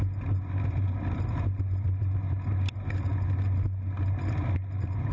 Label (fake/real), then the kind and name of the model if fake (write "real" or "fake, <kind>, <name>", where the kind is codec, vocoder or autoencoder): real